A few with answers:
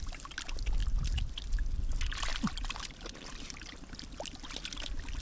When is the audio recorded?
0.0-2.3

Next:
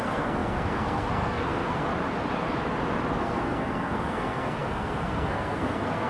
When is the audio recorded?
1.9-3.2

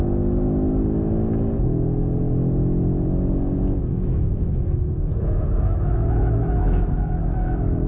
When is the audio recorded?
0.0-3.8

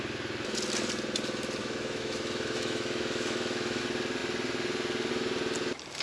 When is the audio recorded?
0.0-1.6; 3.8-6.0

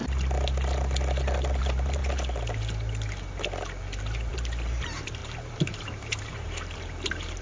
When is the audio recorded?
0.0-1.6; 2.0-4.3